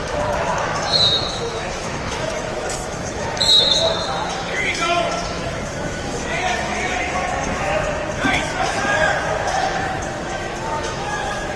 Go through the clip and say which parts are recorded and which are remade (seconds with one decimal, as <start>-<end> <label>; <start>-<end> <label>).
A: 0.0-11.6 remade